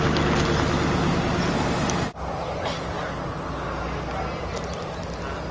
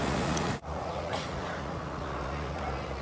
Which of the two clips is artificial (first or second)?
second